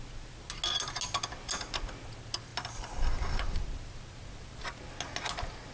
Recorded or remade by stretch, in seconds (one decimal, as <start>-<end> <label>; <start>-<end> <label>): 0.0-5.7 recorded